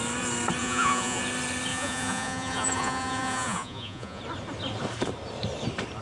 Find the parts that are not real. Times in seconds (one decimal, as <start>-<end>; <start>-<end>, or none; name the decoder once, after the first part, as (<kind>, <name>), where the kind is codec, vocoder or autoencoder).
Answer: 0.6-1.2 (vocoder, Vocos); 1.7-4.2